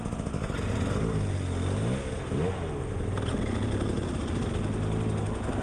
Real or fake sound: real